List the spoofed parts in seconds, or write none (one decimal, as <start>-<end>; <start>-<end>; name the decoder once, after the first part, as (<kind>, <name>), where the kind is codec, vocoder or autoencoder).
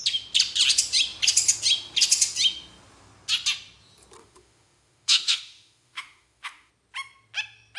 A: 4.2-6.7 (autoencoder, DAC-VAE)